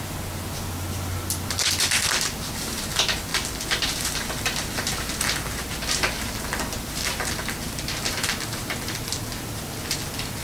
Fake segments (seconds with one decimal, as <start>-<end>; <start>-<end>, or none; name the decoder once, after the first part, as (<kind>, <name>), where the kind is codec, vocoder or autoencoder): 3.3-5.2 (vocoder, BigVGAN v2)